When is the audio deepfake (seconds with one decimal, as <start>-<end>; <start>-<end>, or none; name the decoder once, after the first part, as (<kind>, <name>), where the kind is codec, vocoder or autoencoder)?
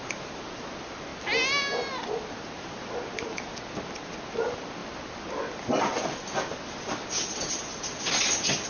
none